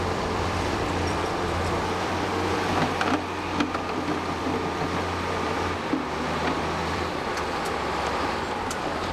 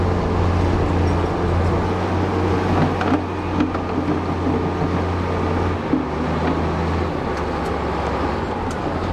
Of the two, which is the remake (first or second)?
first